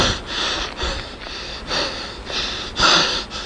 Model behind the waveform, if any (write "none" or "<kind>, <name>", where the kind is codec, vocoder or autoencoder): none